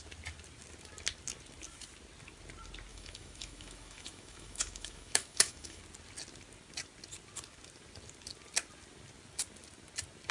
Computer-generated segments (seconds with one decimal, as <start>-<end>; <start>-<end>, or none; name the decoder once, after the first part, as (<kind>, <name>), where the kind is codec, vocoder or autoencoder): 2.9-5.8 (autoencoder, DAC-VAE)